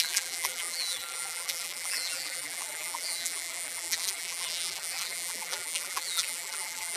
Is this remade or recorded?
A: remade